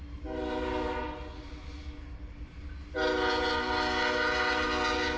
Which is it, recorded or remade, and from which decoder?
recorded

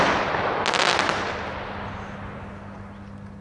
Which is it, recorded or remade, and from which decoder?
recorded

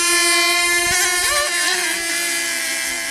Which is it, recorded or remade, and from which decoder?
recorded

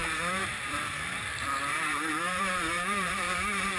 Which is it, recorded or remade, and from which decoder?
remade, vocoder, BigVGAN v2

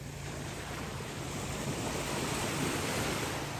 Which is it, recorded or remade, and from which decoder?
remade, vocoder, BigVGAN v2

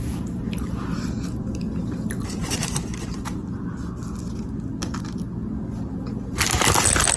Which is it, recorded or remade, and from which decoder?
recorded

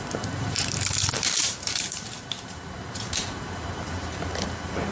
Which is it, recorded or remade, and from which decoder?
remade, vocoder, BigVGAN v2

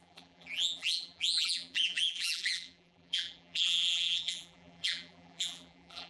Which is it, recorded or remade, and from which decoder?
remade, vocoder, BigVGAN v2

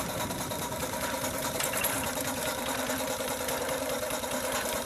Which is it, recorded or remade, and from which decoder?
remade, vocoder, BigVGAN v2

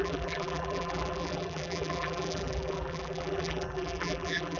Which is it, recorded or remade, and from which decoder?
remade, vocoder, BigVGAN v2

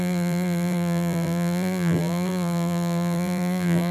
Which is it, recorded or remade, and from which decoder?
remade, vocoder, BigVGAN v2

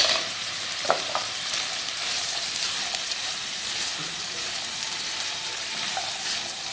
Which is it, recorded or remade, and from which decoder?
remade, vocoder, BigVGAN v2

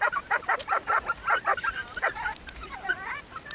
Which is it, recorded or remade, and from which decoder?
recorded